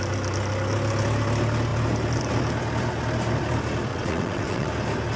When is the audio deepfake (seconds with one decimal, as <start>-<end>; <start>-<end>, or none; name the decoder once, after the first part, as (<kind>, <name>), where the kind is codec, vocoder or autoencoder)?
3.9-4.7 (vocoder, WaveNeXt)